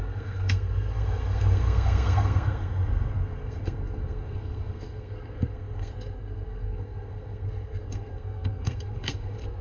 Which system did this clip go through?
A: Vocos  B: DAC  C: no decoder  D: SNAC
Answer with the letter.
D